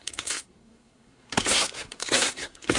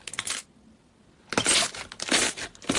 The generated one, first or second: first